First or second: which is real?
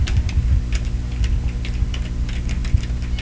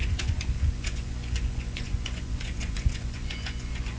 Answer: first